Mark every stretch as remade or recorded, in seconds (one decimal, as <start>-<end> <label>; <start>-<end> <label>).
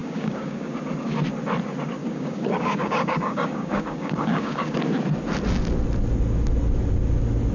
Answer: 0.0-0.7 remade; 0.7-2.0 recorded; 2.0-4.8 remade; 4.8-7.5 recorded